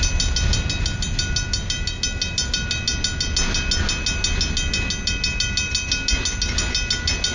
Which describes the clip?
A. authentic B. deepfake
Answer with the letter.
A